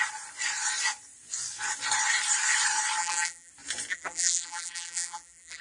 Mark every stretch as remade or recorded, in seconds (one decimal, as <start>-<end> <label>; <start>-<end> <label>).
0.0-3.0 recorded; 3.0-3.5 remade; 3.5-3.9 recorded; 3.9-5.6 remade